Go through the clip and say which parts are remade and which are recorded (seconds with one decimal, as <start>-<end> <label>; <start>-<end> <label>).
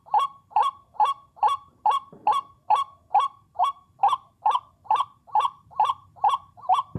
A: 0.0-0.6 remade; 0.6-4.3 recorded; 4.3-7.0 remade